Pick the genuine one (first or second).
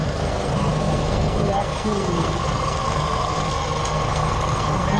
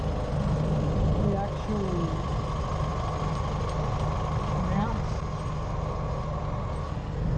second